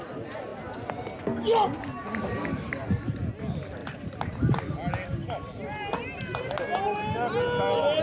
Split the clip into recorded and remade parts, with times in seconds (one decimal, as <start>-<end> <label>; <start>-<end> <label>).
0.0-8.0 recorded